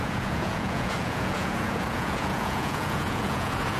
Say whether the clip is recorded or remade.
remade